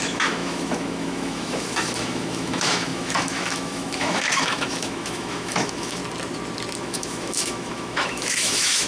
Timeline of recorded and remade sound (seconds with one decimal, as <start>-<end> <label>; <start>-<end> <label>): 0.0-6.0 remade; 6.0-6.8 recorded; 6.8-8.9 remade